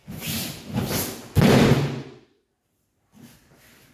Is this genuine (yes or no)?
yes